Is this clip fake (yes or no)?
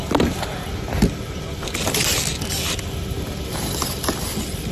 yes